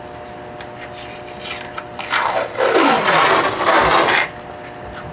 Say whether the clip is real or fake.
real